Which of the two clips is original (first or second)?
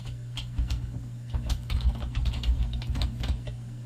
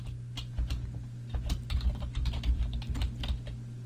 second